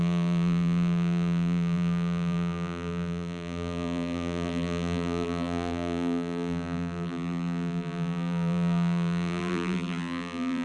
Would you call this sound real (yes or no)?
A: no